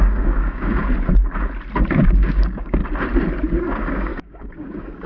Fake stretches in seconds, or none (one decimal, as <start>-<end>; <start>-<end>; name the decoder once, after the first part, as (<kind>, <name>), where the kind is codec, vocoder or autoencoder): 0.0-0.8 (codec, DAC); 1.9-2.8; 3.6-5.1